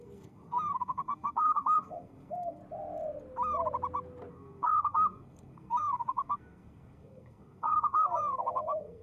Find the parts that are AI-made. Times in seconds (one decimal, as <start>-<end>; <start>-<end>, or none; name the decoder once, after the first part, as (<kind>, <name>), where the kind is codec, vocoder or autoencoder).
0.0-2.6 (codec, SNAC); 4.3-9.0